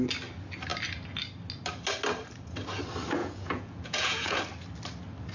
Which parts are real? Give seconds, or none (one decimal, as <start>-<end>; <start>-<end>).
0.0-3.2; 4.4-5.3